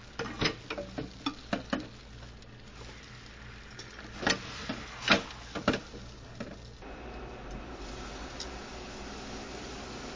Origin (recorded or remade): recorded